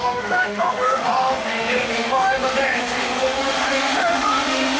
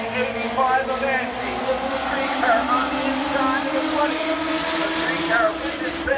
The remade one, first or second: first